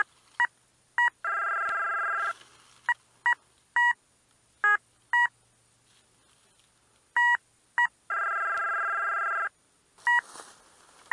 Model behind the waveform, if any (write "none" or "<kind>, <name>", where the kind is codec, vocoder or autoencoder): none